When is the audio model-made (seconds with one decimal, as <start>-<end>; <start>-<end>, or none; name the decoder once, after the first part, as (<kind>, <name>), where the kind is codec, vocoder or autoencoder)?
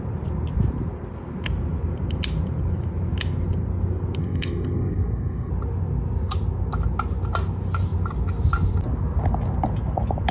4.2-5.5 (codec, SNAC)